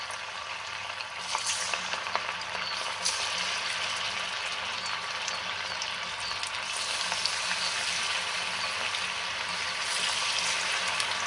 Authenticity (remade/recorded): recorded